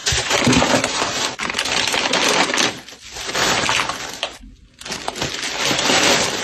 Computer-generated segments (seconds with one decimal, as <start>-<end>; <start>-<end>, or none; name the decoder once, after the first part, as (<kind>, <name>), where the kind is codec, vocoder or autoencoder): 0.0-0.7 (vocoder, Vocos)